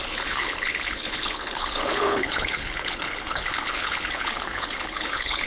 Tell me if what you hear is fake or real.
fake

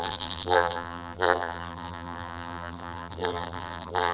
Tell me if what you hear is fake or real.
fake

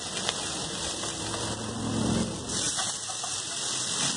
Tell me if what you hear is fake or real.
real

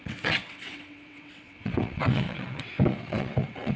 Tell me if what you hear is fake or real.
fake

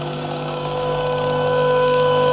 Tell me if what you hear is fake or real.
fake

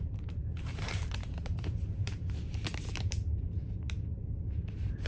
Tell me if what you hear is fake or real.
fake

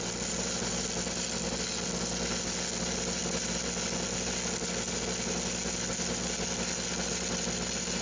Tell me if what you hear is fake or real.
real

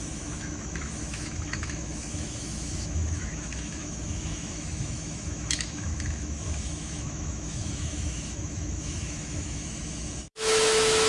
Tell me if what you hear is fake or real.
fake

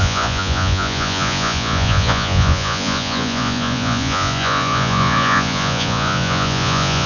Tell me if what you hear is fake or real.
fake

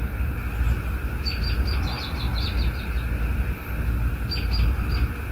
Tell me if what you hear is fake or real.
real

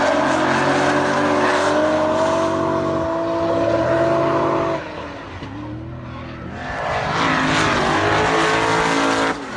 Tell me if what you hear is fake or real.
real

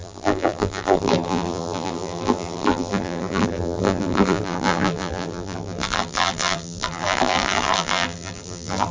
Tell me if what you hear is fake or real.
fake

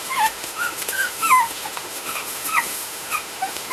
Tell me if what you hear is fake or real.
fake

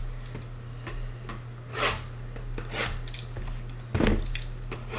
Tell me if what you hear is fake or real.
real